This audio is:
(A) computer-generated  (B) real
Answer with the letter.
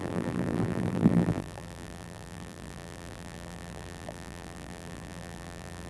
A